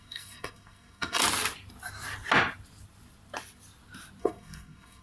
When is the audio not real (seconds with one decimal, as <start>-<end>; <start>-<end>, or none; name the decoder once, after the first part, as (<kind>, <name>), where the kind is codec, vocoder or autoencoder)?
0.0-1.2 (codec, SNAC); 4.2-5.0